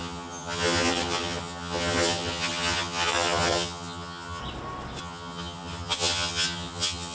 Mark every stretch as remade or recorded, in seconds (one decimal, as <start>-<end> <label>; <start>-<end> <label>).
0.0-4.4 remade; 4.4-5.0 recorded; 5.0-7.1 remade